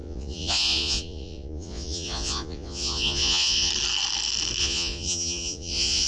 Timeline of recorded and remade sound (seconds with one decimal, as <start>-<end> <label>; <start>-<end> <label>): 0.0-3.7 remade; 3.7-4.6 recorded; 4.6-6.1 remade